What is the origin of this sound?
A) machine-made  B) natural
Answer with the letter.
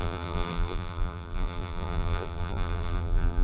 A